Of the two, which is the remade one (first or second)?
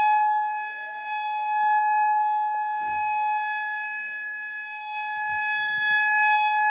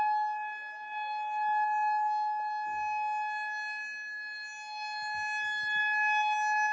first